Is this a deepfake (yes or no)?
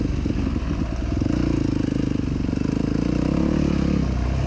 no